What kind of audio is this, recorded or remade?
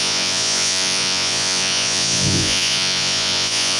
remade